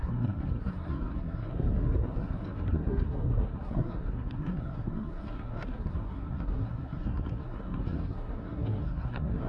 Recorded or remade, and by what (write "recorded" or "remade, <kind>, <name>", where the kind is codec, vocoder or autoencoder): remade, codec, SNAC